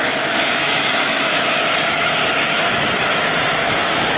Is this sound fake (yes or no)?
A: yes